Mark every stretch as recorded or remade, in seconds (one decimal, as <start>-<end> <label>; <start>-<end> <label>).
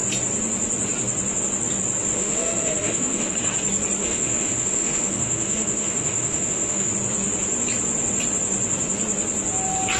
0.0-2.1 recorded; 2.1-3.3 remade; 3.3-4.0 recorded; 4.0-6.9 remade; 6.9-10.0 recorded